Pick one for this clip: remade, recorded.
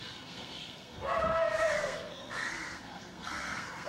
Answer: remade